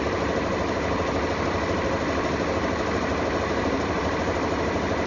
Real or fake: real